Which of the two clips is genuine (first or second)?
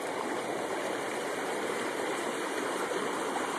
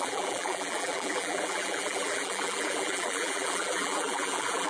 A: first